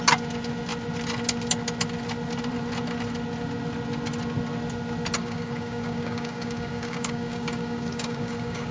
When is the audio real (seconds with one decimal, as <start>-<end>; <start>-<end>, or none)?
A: 0.0-5.2